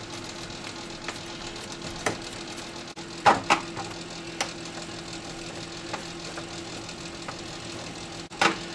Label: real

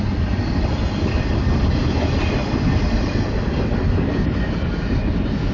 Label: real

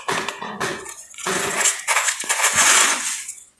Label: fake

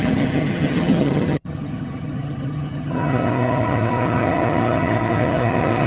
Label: fake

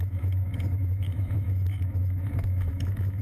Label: fake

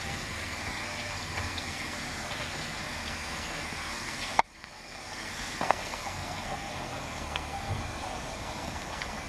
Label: fake